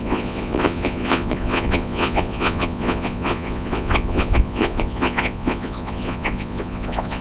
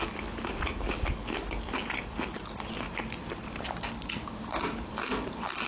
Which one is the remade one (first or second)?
first